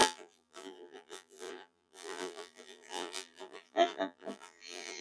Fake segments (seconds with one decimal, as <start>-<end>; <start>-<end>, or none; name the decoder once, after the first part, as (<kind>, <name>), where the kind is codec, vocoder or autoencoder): 0.0-5.0 (vocoder, BigVGAN v2)